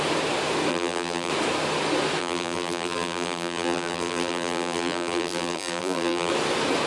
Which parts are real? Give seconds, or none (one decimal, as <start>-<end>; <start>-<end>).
0.0-0.7; 1.3-2.2; 6.3-6.9